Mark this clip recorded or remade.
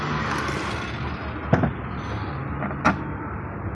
recorded